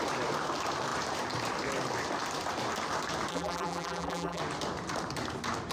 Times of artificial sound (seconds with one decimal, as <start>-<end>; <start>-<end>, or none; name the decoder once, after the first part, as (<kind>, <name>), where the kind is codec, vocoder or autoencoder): 3.3-4.4 (vocoder, BigVGAN v2)